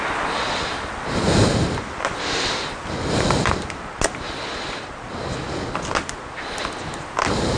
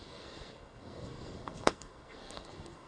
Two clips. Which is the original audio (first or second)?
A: first